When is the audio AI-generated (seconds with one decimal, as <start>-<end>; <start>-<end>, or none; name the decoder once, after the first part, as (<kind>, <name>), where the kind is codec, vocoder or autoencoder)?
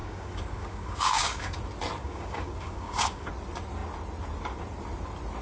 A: 0.0-1.6 (codec, DAC); 2.0-3.3